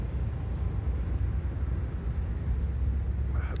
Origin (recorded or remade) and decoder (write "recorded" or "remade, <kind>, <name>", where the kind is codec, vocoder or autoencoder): recorded